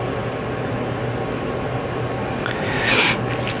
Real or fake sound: real